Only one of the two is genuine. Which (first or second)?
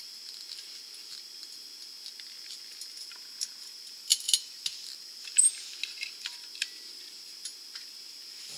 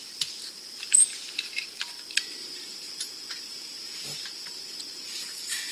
first